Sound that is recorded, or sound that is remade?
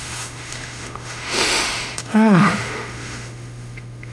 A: remade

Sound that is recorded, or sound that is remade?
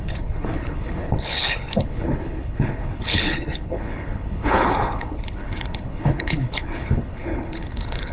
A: remade